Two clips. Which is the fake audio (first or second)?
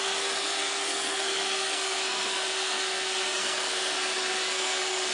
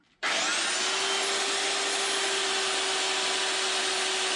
first